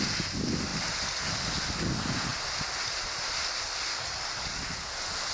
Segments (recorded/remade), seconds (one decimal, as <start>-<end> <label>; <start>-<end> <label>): 0.0-3.9 recorded; 3.9-4.6 remade; 4.6-5.3 recorded